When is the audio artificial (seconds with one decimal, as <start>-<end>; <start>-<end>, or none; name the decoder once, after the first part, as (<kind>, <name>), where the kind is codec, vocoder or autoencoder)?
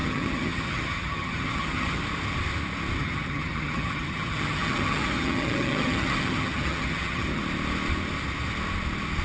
0.0-2.0 (vocoder, HiFi-GAN); 3.0-7.4